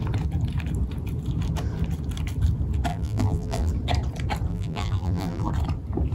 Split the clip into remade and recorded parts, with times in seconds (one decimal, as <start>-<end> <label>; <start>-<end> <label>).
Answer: 0.0-2.9 recorded; 2.9-3.7 remade; 3.7-4.5 recorded; 4.5-5.5 remade; 5.5-6.1 recorded